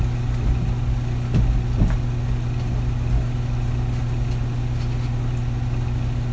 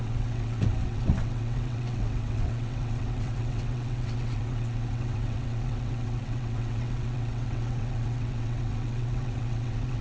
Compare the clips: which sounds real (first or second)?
first